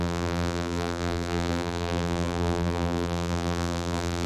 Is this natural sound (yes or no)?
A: no